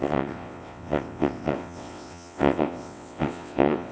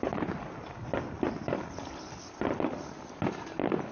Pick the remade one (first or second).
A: first